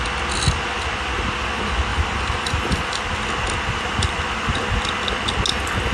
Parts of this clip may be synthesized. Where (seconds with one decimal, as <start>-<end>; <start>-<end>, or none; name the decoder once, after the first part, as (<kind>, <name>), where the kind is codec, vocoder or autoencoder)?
1.9-5.4 (vocoder, BigVGAN v2)